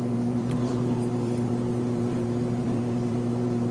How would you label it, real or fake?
fake